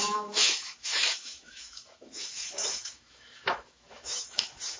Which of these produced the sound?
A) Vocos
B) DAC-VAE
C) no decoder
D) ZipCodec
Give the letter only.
B